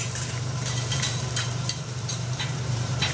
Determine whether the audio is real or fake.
fake